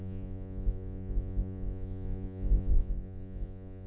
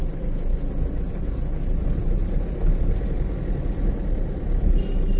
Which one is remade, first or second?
first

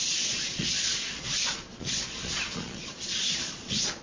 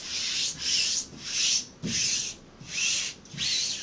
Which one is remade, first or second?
first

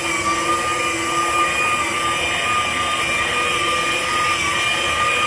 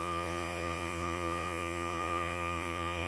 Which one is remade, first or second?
second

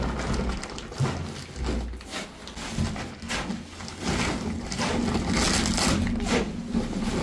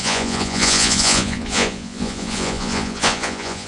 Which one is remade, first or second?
second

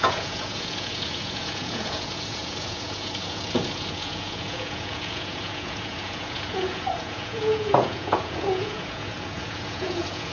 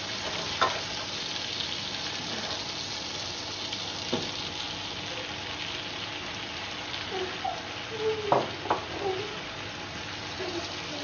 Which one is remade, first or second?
first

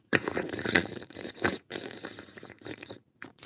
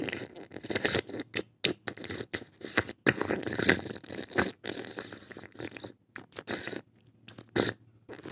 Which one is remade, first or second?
first